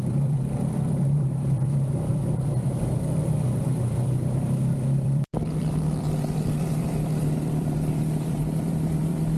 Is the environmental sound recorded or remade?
remade